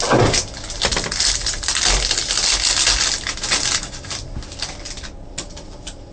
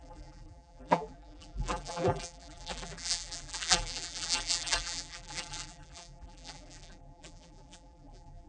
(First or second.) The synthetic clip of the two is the second